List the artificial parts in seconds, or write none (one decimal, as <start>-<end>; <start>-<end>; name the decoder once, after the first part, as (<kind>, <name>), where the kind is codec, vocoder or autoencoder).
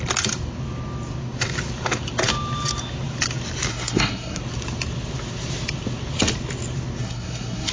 3.7-4.4 (codec, SNAC); 7.0-7.7